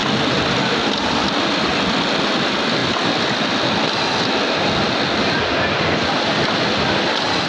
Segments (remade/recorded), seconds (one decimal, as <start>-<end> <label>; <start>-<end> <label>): 0.0-7.5 recorded